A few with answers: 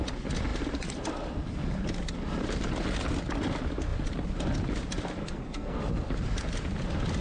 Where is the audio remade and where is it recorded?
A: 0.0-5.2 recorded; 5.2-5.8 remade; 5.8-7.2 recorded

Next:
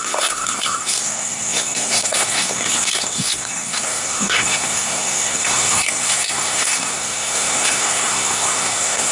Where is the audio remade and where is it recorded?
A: 0.0-9.1 remade

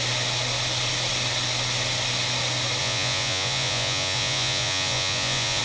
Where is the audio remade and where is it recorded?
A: 0.0-2.8 recorded; 2.8-5.6 remade

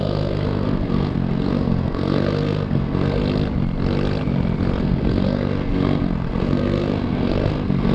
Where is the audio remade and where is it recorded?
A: 0.0-3.2 remade; 3.2-4.8 recorded; 4.8-7.9 remade

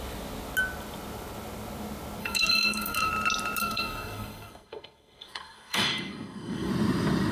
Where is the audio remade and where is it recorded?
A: 0.0-2.2 recorded; 2.2-3.1 remade; 3.1-3.6 recorded; 3.6-6.7 remade; 6.7-7.3 recorded

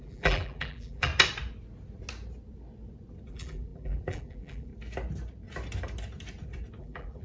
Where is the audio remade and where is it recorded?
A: 0.0-1.1 remade; 1.1-3.3 recorded; 3.3-4.7 remade; 4.7-6.8 recorded; 6.8-7.2 remade

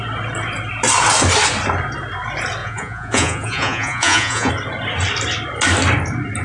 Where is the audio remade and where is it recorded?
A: 0.0-2.6 recorded; 2.6-4.5 remade; 4.5-6.4 recorded